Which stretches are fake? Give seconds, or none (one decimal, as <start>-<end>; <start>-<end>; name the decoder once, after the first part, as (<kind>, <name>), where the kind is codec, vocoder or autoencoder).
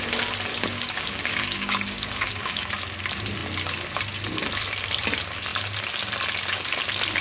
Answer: 0.5-2.7 (codec, DAC)